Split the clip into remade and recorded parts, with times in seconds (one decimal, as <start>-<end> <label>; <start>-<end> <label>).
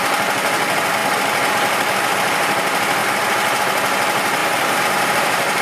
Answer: 0.0-4.4 recorded; 4.4-5.6 remade